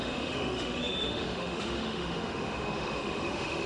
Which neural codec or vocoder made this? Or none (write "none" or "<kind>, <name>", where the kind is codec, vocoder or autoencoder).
autoencoder, DAC-VAE